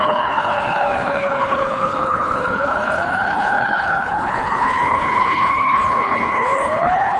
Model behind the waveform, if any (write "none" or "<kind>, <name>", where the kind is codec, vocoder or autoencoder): codec, HILCodec